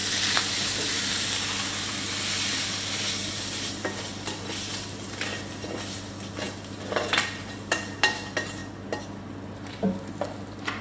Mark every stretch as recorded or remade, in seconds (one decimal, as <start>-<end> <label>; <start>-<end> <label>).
0.0-4.7 remade; 4.7-5.5 recorded; 5.5-8.6 remade; 8.6-10.8 recorded